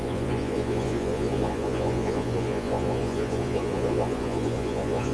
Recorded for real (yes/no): no